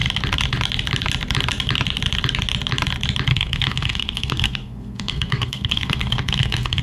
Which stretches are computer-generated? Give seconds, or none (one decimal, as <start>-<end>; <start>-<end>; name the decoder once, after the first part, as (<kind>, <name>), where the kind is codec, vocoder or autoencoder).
3.3-6.8 (codec, SNAC)